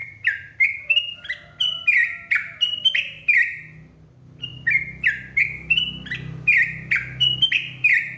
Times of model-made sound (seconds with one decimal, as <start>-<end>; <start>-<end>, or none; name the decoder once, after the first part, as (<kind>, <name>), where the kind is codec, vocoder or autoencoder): 0.0-1.2 (vocoder, BigVGAN v2); 2.0-3.0